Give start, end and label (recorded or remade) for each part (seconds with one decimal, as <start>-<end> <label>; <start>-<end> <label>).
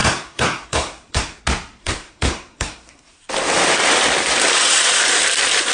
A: 0.0-1.4 remade; 1.4-1.8 recorded; 1.8-3.2 remade; 3.2-5.7 recorded